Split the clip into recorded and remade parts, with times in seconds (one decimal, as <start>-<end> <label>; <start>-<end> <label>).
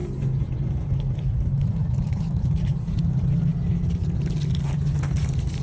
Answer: 0.0-3.0 remade; 3.0-5.6 recorded